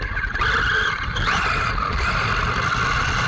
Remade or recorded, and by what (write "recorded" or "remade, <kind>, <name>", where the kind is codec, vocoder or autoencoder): recorded